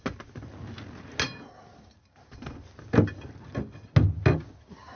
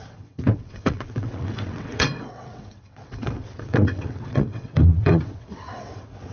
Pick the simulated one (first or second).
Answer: second